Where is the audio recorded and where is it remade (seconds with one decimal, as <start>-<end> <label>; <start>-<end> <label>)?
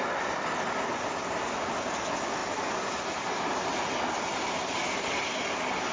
0.0-5.9 recorded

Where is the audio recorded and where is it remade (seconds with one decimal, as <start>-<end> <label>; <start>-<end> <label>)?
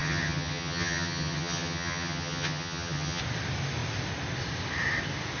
0.0-3.2 remade; 3.2-5.4 recorded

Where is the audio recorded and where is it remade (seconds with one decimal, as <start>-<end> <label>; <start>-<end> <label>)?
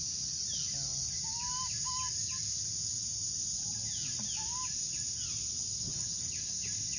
0.0-5.8 recorded; 5.8-6.5 remade; 6.5-7.0 recorded